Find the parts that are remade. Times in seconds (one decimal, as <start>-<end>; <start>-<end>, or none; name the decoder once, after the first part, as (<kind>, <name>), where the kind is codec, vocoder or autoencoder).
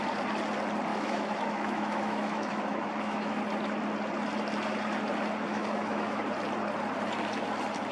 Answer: 0.9-3.4 (autoencoder, DAC-VAE); 5.5-6.2